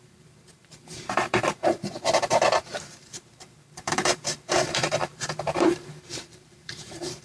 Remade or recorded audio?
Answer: remade